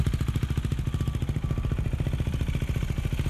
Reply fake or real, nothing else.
real